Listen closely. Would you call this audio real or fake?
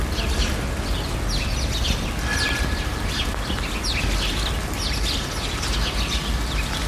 real